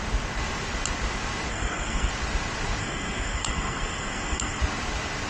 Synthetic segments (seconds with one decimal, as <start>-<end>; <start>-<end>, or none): 1.5-2.1; 2.8-4.6